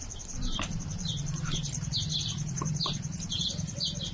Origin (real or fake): fake